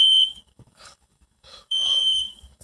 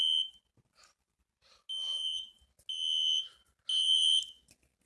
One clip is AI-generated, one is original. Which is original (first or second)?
second